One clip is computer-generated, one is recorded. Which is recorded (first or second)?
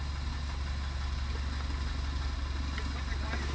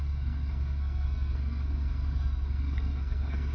first